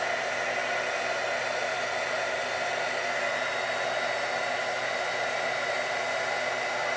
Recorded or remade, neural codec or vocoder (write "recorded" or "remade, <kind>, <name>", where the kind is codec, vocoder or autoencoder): recorded